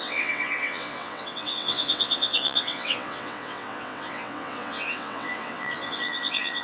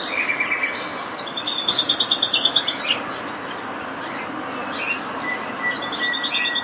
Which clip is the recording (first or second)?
second